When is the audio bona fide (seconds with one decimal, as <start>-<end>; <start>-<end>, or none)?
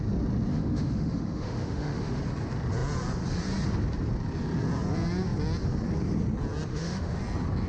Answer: 0.0-0.5; 2.2-6.7; 7.2-7.7